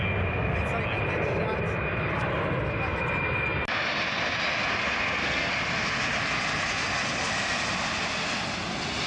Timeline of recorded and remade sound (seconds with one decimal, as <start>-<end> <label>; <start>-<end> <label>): 0.0-5.0 recorded; 5.0-5.5 remade; 5.5-9.1 recorded